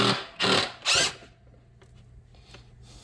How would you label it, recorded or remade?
recorded